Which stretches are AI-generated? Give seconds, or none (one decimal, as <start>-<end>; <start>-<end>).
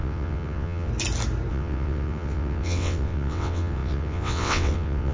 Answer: 0.0-0.9; 1.5-5.1